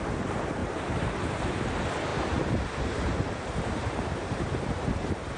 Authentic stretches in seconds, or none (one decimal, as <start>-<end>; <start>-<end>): 0.0-0.6; 1.5-2.1